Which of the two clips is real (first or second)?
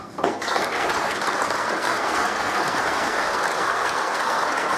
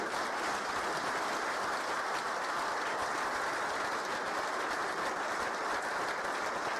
second